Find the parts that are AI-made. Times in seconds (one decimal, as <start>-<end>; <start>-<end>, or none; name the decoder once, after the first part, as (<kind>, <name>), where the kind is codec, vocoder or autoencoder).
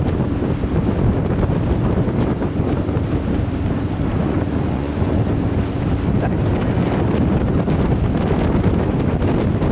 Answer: 4.2-5.2 (vocoder, Vocos)